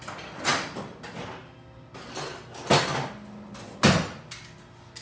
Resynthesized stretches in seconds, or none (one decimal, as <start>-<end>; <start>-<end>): none